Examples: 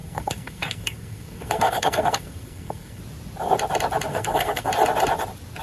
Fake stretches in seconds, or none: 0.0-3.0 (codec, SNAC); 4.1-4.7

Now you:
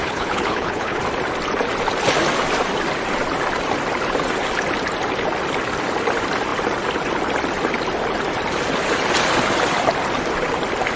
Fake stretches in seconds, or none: 0.0-1.0 (codec, HILCodec)

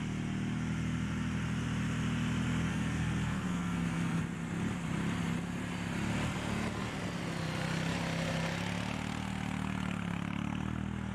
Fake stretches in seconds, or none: 2.7-4.2 (codec, SNAC)

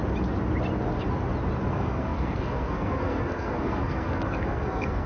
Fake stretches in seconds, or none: 1.7-5.1 (codec, SNAC)

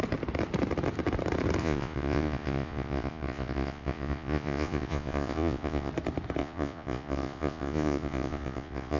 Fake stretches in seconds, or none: 1.6-5.9 (vocoder, Vocos); 6.4-9.0

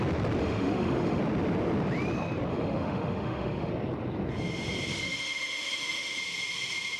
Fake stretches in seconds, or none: 0.4-1.2 (autoencoder, DAC-VAE); 2.5-3.7; 4.9-6.2

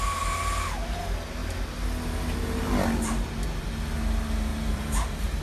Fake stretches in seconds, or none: 4.5-5.4 (vocoder, BigVGAN v2)